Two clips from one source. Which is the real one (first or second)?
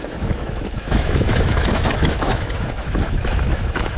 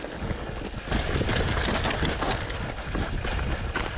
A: second